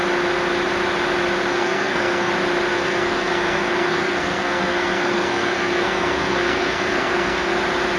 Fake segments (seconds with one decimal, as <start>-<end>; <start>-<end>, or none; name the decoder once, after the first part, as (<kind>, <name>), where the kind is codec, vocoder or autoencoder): 1.5-2.3 (codec, SNAC); 2.7-7.5